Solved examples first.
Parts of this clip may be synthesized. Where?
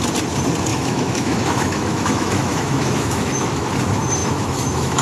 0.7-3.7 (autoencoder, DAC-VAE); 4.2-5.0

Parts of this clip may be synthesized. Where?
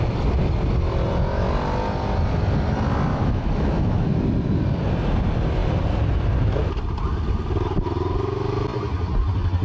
3.1-4.2 (autoencoder, DAC-VAE)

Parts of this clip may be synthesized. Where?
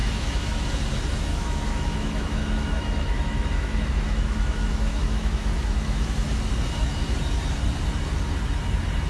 0.0-0.7 (autoencoder, DAC-VAE); 1.3-6.4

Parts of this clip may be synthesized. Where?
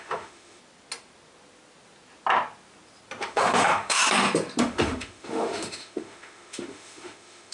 0.0-0.6 (autoencoder, DAC-VAE); 3.2-4.0; 4.6-7.5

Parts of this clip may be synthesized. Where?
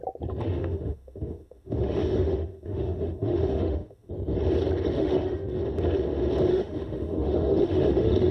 0.4-4.1 (autoencoder, DAC-VAE); 5.0-5.6; 6.5-8.3